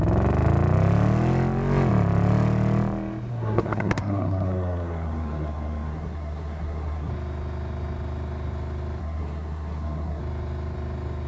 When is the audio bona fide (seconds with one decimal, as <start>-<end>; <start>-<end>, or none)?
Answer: 0.0-3.3; 7.1-9.0; 10.2-11.3